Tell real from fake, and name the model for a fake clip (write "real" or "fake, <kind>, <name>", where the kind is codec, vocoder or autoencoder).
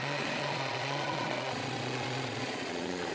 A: fake, vocoder, Vocos